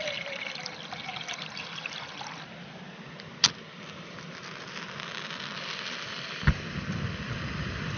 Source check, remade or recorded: recorded